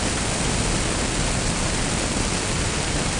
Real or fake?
real